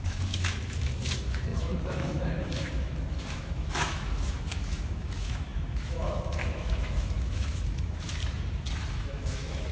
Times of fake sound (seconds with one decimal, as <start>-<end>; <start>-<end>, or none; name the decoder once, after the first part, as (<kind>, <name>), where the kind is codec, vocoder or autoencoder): 0.0-8.2 (autoencoder, DAC-VAE); 8.9-9.7